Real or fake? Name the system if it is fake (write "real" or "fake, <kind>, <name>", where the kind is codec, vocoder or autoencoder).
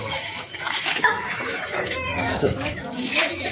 fake, autoencoder, DAC-VAE